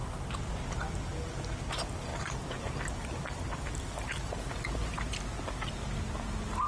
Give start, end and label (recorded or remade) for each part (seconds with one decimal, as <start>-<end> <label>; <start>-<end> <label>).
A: 0.0-6.7 recorded